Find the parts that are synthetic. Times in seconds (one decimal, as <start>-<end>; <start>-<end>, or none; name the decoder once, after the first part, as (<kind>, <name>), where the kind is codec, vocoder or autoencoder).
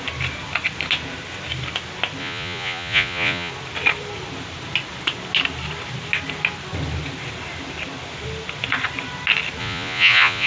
2.2-3.5 (vocoder, Vocos); 9.6-10.5